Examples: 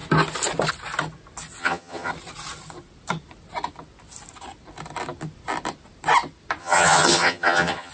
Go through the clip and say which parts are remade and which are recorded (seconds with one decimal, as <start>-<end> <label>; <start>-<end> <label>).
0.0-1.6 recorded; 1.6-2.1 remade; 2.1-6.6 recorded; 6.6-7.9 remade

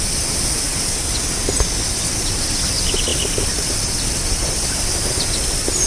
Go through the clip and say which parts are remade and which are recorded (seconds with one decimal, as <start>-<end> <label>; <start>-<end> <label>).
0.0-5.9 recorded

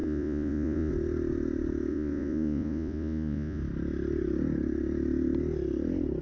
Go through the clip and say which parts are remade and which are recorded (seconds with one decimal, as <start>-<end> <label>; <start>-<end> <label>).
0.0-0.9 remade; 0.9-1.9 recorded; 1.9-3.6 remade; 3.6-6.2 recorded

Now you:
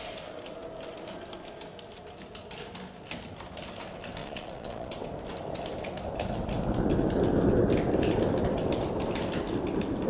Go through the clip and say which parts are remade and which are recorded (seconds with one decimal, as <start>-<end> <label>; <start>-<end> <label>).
0.0-4.2 recorded; 4.2-4.9 remade; 4.9-10.1 recorded